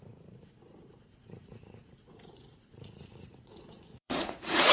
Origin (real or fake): fake